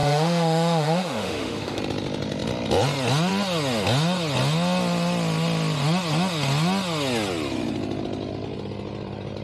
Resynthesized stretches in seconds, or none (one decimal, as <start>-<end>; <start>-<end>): 0.0-1.8

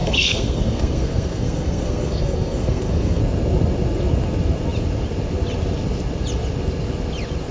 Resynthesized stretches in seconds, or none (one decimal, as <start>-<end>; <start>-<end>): 0.0-3.2